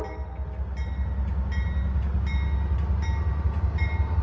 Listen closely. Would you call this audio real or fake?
real